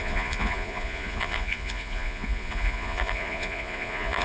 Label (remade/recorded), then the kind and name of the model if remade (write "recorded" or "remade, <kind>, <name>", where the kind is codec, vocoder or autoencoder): remade, vocoder, Vocos